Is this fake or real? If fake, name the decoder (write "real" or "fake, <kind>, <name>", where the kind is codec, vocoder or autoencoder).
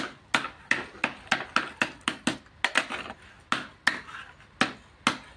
real